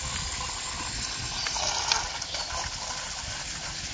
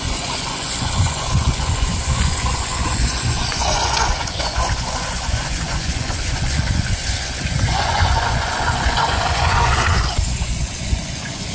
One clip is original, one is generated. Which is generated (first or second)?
second